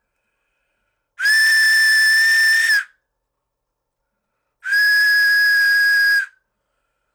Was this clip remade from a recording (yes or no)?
no